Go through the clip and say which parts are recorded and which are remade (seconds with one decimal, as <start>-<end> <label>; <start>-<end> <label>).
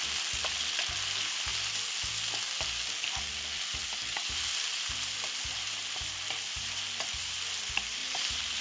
0.0-8.0 recorded; 8.0-8.6 remade